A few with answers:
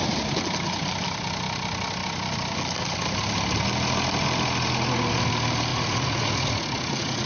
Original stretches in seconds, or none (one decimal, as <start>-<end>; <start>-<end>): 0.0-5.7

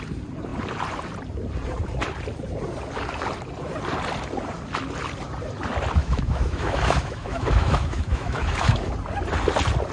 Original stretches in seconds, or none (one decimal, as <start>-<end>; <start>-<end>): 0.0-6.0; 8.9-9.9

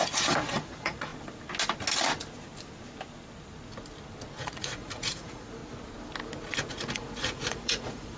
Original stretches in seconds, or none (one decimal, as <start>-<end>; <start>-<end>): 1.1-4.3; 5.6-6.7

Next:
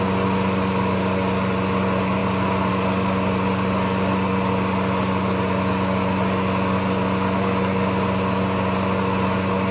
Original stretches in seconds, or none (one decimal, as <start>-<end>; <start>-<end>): 0.0-9.7